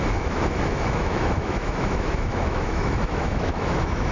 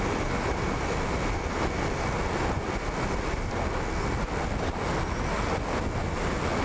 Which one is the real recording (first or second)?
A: second